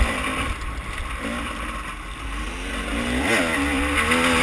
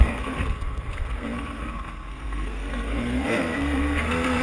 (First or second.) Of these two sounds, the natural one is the first